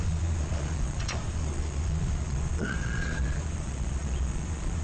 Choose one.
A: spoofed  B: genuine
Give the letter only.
A